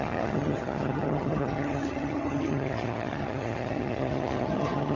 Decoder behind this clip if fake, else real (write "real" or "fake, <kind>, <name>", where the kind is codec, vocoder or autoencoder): fake, vocoder, HiFi-GAN